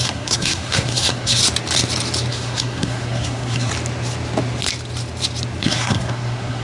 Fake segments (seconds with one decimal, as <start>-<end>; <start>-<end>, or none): 0.0-1.4; 2.3-3.7; 5.6-6.6